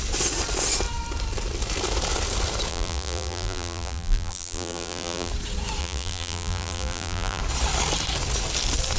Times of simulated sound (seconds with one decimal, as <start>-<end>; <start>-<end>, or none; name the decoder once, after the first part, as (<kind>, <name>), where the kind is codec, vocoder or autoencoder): 2.7-5.3 (vocoder, BigVGAN v2); 5.8-7.4